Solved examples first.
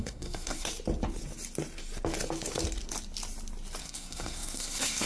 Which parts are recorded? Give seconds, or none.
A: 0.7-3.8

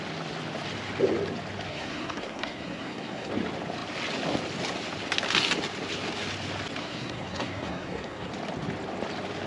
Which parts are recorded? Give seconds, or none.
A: 0.0-1.7; 3.3-6.8; 8.3-9.5

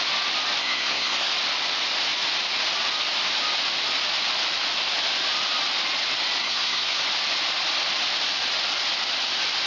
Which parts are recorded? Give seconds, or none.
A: 0.0-0.6; 1.3-6.4; 7.0-9.7

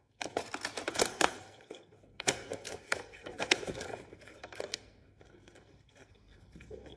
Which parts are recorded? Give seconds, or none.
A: 0.4-0.9

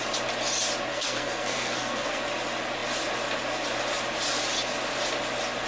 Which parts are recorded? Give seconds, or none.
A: 0.0-0.9; 2.2-5.7